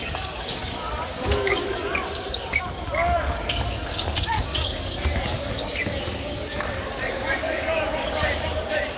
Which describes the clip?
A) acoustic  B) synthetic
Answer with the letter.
B